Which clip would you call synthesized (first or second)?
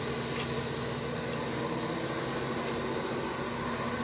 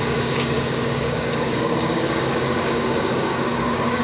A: second